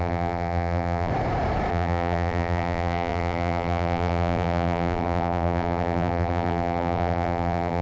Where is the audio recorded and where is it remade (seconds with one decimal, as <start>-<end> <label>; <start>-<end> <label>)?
0.0-1.1 remade; 1.1-1.7 recorded; 1.7-7.8 remade